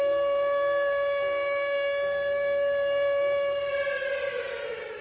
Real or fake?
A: real